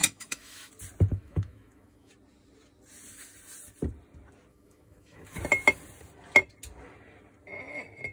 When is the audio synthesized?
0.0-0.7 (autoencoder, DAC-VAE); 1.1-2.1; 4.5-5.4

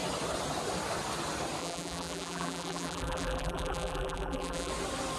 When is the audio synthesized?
1.6-4.7 (vocoder, BigVGAN v2)

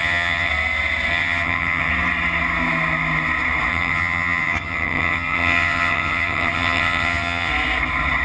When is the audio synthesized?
0.0-0.5 (vocoder, HiFi-GAN); 1.1-1.9; 3.7-7.5

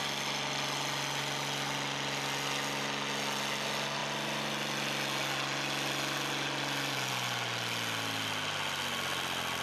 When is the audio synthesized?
none

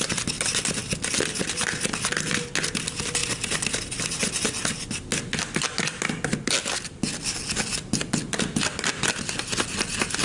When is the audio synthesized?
none